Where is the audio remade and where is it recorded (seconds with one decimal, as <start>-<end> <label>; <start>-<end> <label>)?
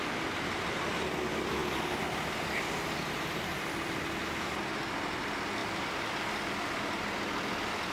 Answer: 0.0-5.6 recorded; 5.6-6.8 remade; 6.8-7.9 recorded